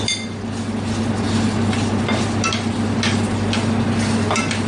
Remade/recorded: recorded